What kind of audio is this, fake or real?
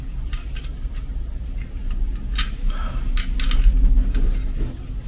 real